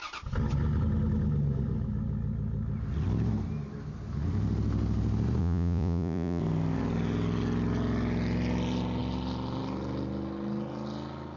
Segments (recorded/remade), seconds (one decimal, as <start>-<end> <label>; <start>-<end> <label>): 0.0-5.4 recorded; 5.4-6.4 remade; 6.4-11.4 recorded